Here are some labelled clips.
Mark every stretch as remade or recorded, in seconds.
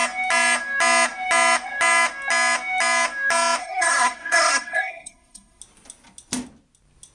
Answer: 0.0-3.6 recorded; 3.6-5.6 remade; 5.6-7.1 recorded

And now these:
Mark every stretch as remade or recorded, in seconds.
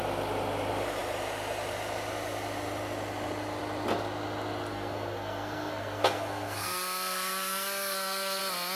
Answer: 0.0-4.7 recorded; 4.7-8.4 remade; 8.4-8.8 recorded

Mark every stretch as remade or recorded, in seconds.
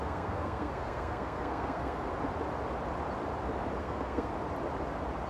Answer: 0.0-2.1 remade; 2.1-3.8 recorded; 3.8-4.3 remade; 4.3-5.3 recorded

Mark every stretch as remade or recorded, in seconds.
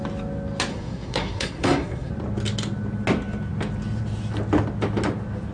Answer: 0.0-0.7 recorded; 0.7-2.1 remade; 2.1-5.5 recorded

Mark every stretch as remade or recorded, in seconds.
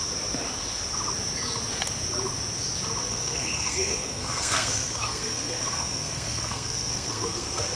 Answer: 0.0-3.1 recorded; 3.1-7.8 remade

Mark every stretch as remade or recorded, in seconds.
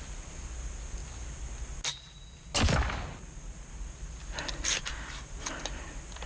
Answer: 0.0-6.3 recorded